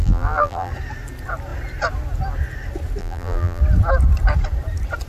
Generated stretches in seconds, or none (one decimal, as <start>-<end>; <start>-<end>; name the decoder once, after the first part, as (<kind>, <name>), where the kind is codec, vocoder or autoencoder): 0.0-0.7 (vocoder, BigVGAN v2); 3.0-3.6